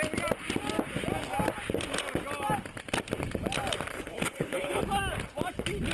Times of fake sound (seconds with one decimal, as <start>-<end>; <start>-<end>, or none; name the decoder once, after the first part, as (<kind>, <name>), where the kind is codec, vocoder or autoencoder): 3.9-4.8 (codec, HILCodec)